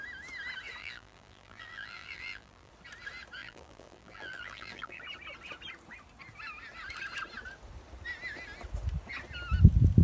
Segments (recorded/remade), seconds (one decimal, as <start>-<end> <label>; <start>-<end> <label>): 0.0-0.8 recorded; 0.8-2.7 remade; 2.7-3.4 recorded; 3.4-5.0 remade; 5.0-10.0 recorded